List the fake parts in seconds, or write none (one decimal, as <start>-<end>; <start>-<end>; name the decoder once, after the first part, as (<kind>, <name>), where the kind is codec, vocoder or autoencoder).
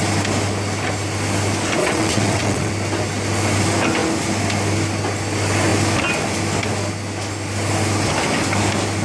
1.8-2.7 (vocoder, WaveNeXt)